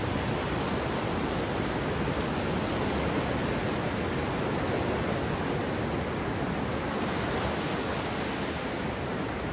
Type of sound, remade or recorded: recorded